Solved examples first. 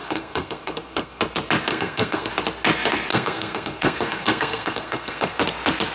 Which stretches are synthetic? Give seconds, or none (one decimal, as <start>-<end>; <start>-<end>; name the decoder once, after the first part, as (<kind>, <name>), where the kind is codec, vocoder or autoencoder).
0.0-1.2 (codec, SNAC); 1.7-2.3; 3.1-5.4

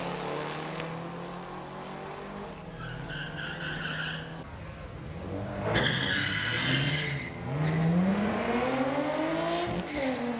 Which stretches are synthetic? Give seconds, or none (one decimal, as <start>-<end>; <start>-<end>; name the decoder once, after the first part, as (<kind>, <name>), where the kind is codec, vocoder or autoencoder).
5.5-6.9 (codec, SNAC)

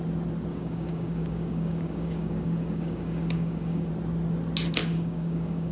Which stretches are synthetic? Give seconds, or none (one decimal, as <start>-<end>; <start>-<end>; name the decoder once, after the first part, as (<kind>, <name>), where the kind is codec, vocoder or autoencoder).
0.5-3.9 (codec, DAC); 4.8-5.7

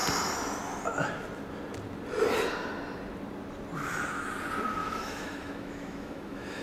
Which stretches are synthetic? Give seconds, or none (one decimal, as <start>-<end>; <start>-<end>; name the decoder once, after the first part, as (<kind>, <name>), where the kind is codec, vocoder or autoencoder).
4.8-6.6 (autoencoder, DAC-VAE)